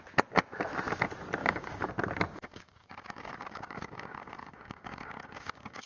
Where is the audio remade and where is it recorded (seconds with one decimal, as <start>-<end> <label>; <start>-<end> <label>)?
0.0-1.4 recorded; 1.4-1.9 remade; 1.9-2.3 recorded; 2.3-5.9 remade